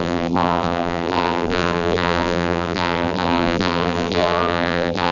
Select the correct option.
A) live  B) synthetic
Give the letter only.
B